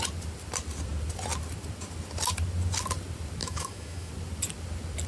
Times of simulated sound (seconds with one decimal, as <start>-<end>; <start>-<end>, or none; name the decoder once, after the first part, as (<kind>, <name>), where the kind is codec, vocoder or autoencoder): 3.4-4.1 (autoencoder, DAC-VAE)